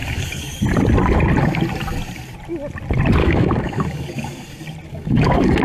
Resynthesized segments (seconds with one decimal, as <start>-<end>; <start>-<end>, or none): 0.0-0.6; 3.2-4.5; 4.9-5.6